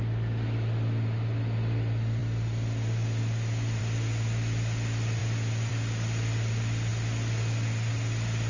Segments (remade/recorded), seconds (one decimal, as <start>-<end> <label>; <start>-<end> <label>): 0.0-8.5 recorded